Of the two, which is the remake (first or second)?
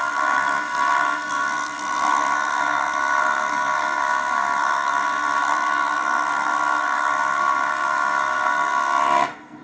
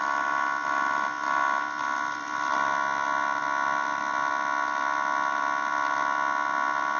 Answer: first